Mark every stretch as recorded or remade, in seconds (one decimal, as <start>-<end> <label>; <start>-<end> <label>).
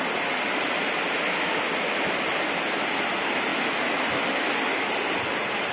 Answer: 0.0-5.7 recorded